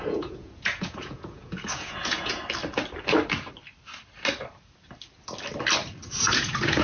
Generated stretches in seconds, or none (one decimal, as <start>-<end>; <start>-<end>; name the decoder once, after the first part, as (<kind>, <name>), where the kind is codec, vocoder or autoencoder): 0.0-2.4 (vocoder, Vocos); 6.2-6.8